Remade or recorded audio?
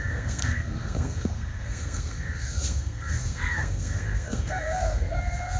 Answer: remade